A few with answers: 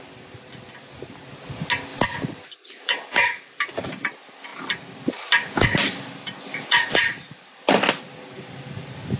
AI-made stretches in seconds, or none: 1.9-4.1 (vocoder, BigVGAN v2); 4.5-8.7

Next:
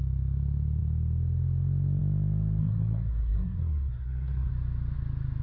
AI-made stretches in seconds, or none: 2.6-4.5 (codec, SNAC)

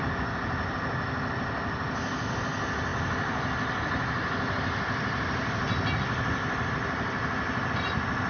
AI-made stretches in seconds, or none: none

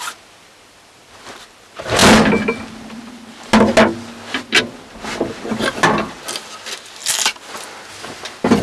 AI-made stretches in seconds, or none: none

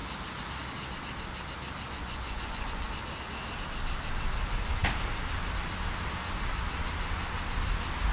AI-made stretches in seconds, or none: 2.0-2.9 (vocoder, Vocos)

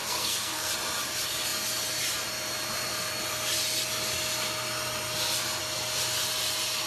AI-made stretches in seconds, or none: 0.0-0.7 (codec, SNAC)